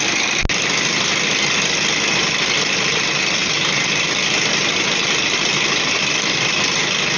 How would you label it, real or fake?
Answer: real